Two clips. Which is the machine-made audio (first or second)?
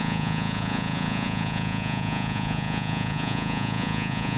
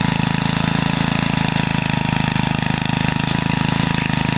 first